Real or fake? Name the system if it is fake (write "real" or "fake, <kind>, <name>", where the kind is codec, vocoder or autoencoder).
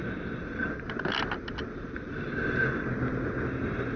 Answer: real